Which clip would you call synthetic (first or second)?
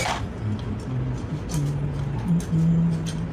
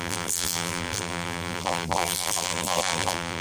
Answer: second